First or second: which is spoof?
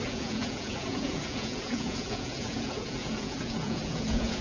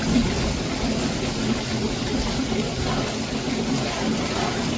first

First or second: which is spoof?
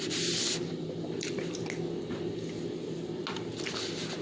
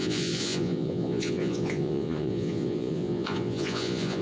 second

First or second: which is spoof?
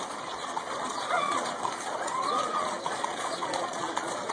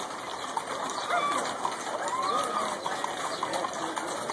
first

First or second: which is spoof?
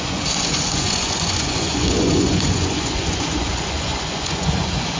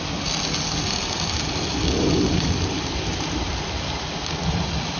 first